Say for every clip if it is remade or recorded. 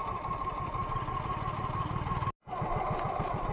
recorded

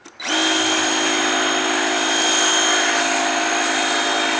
recorded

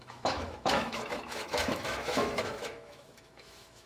remade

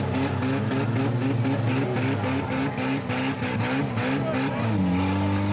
recorded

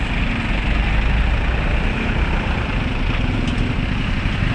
recorded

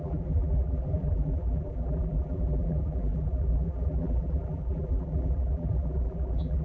remade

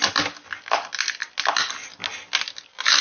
recorded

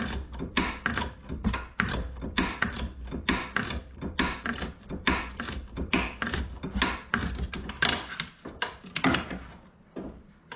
recorded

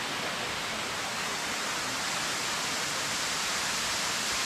recorded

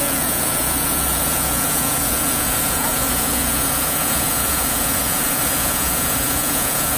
remade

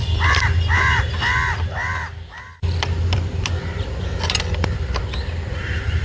remade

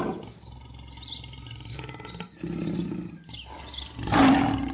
recorded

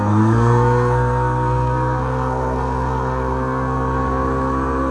remade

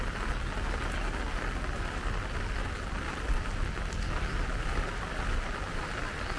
recorded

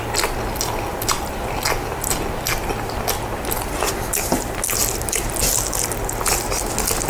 recorded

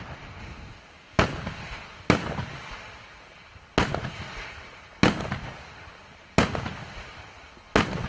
recorded